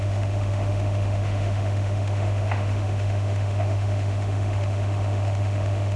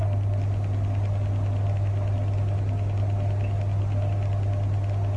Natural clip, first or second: second